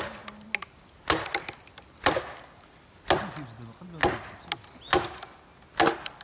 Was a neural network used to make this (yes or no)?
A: no